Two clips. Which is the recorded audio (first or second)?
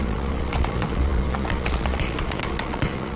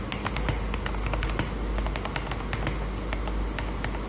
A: second